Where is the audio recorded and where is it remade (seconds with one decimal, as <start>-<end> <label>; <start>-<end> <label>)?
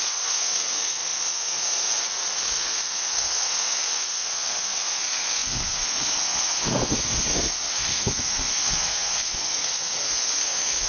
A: 0.0-10.9 remade